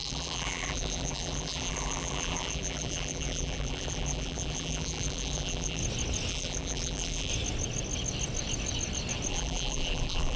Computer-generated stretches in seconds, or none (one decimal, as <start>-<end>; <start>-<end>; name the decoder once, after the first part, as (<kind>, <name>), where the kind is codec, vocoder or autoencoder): 0.0-5.8 (vocoder, BigVGAN v2); 6.3-7.3; 9.3-10.4